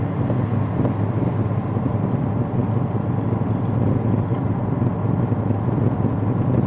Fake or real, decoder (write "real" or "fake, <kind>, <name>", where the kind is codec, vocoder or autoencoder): real